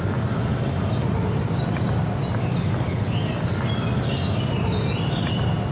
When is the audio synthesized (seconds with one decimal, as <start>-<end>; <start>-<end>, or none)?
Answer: none